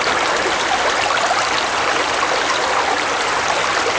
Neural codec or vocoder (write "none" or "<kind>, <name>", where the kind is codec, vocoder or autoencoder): none